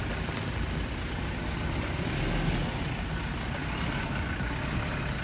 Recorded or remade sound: recorded